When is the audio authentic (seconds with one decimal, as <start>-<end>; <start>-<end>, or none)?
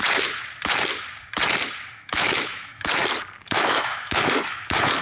0.4-1.9; 3.0-3.5